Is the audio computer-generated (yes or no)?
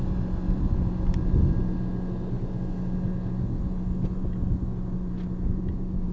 no